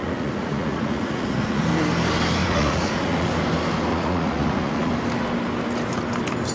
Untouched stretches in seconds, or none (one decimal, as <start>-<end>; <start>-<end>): 1.6-2.4; 3.3-3.9; 4.9-6.5